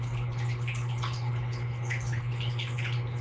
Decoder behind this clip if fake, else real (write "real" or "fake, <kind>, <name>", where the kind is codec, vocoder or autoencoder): fake, codec, HILCodec